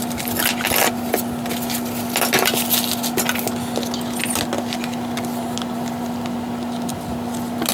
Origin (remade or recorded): recorded